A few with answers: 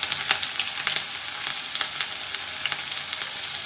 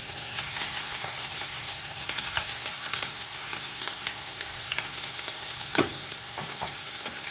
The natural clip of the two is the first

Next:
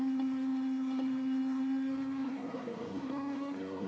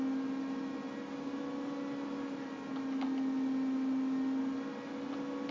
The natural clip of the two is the second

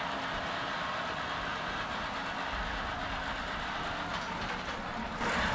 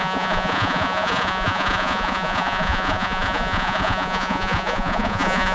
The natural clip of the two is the first